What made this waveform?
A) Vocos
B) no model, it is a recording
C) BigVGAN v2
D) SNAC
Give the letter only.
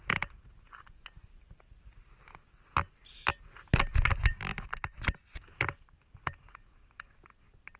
B